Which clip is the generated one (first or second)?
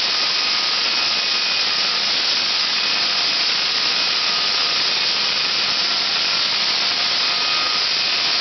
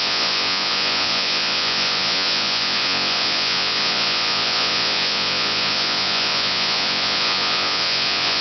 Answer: second